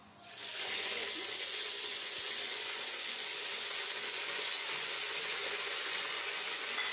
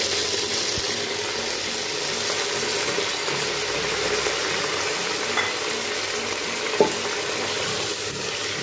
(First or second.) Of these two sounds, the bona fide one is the second